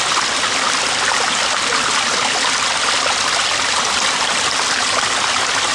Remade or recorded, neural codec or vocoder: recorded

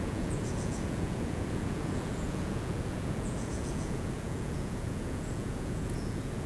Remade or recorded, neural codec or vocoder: remade, vocoder, Vocos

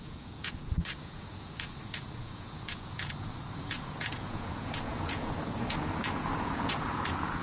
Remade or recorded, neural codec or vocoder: remade, vocoder, Vocos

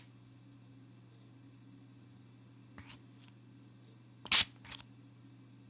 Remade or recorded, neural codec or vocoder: recorded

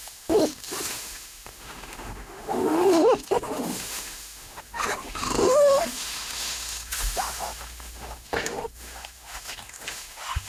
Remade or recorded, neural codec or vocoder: remade, autoencoder, DAC-VAE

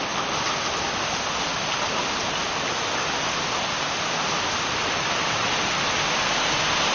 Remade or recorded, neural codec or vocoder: recorded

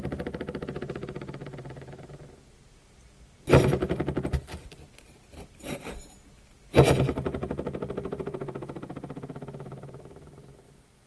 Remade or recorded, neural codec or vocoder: recorded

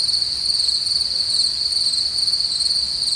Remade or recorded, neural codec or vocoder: recorded